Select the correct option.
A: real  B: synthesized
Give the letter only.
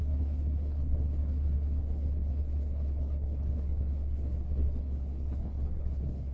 B